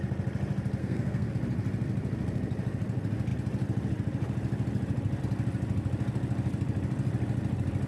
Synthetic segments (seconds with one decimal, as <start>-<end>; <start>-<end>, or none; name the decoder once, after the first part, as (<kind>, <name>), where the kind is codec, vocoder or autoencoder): 0.8-1.3 (codec, SNAC)